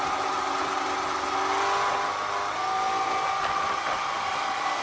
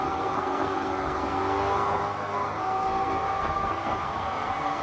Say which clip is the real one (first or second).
first